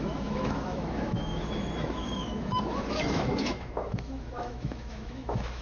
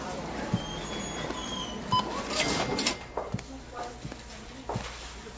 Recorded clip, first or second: second